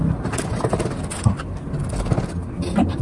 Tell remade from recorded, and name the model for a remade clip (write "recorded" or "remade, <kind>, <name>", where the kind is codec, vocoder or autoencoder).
recorded